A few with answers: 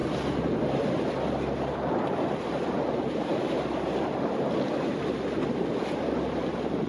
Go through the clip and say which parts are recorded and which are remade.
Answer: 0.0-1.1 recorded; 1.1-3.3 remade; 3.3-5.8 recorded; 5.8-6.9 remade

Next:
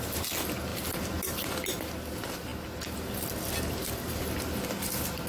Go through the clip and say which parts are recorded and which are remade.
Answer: 0.0-5.3 recorded